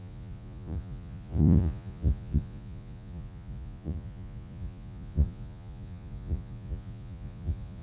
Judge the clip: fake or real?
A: fake